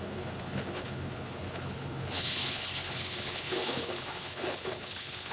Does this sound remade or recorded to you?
remade